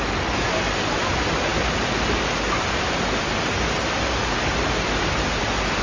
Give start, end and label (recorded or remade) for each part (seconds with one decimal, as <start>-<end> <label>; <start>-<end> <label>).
0.0-5.8 recorded